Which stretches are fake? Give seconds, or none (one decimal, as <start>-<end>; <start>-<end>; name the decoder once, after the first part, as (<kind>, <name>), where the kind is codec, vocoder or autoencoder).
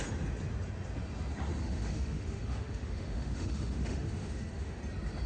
1.6-4.8 (autoencoder, DAC-VAE)